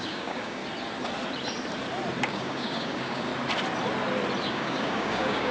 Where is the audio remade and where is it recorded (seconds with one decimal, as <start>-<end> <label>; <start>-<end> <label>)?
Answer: 0.0-0.6 remade; 0.6-2.2 recorded; 2.2-3.3 remade; 3.3-4.5 recorded; 4.5-5.5 remade